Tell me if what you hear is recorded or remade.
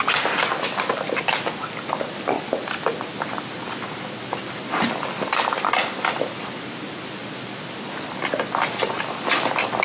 recorded